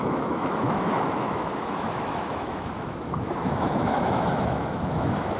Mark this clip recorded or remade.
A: remade